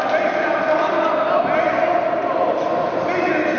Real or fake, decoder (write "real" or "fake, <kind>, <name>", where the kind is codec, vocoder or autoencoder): real